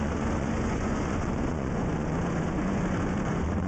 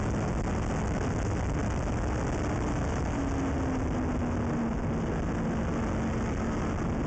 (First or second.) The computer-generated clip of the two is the first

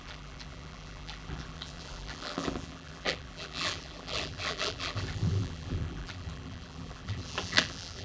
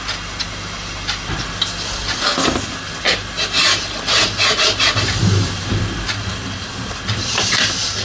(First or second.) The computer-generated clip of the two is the first